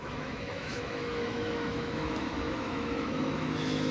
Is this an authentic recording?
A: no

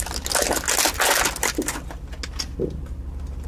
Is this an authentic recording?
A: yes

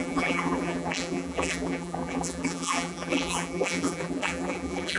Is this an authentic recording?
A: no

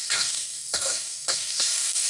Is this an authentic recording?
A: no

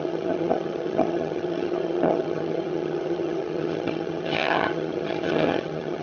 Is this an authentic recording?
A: no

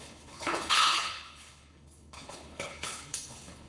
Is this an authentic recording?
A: no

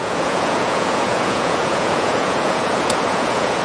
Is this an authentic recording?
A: no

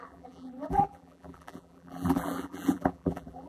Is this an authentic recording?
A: no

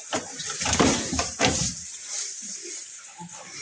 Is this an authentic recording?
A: no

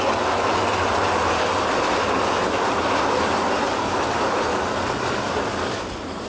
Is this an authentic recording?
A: yes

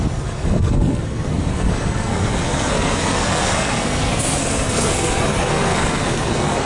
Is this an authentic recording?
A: no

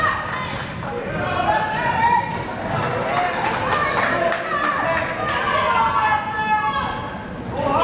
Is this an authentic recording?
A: yes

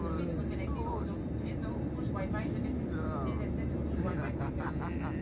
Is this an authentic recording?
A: yes